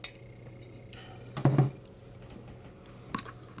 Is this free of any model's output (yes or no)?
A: yes